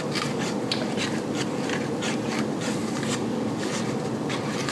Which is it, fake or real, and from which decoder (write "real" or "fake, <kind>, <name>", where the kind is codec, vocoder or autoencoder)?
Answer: real